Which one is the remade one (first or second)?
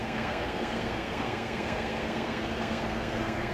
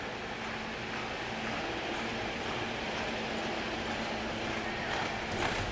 first